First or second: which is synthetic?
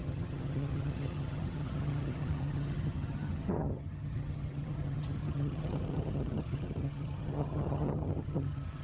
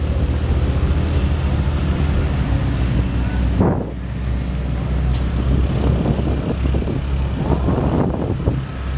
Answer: first